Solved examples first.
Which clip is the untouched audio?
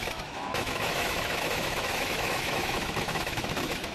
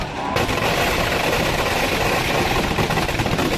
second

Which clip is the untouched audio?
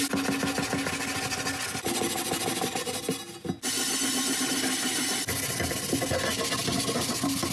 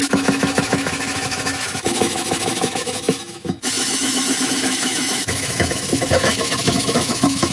first